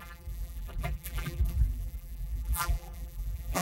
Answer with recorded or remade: remade